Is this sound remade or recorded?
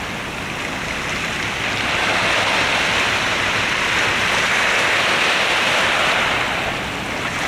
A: recorded